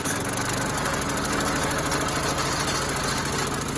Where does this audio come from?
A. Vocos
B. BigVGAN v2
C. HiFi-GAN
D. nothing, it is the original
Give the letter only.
D